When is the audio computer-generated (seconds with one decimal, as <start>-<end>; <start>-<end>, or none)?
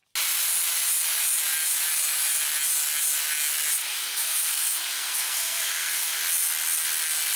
3.8-6.2